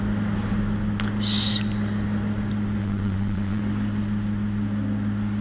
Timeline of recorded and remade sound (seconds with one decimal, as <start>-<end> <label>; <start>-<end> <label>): 0.0-2.8 recorded; 2.8-3.6 remade; 3.6-5.4 recorded